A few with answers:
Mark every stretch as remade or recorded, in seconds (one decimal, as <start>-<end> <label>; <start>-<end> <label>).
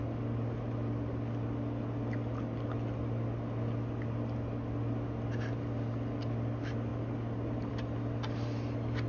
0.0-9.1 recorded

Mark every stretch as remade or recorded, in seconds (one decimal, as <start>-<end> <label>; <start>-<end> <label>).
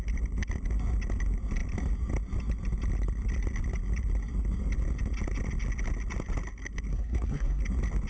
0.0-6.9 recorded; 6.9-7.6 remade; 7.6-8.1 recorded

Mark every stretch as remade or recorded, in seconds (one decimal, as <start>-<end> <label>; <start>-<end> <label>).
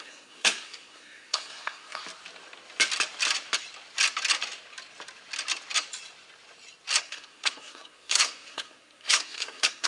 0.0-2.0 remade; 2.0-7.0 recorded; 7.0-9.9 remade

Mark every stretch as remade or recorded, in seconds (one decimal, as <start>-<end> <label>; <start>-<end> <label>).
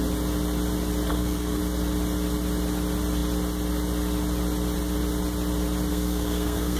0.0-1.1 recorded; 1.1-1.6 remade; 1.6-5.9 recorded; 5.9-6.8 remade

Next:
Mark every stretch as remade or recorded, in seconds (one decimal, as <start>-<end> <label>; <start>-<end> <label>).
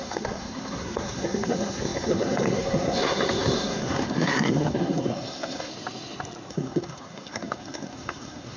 0.0-5.7 remade; 5.7-6.5 recorded; 6.5-8.6 remade